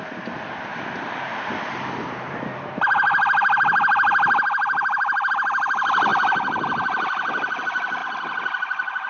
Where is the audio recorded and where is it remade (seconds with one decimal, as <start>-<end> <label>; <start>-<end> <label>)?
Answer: 0.0-0.7 recorded; 0.7-5.3 remade; 5.3-6.1 recorded; 6.1-7.6 remade; 7.6-9.1 recorded